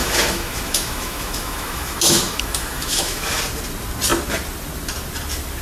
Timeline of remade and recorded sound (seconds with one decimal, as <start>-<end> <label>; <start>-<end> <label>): 0.0-3.4 remade; 3.4-5.6 recorded